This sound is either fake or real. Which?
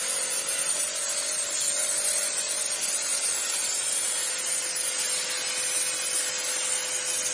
real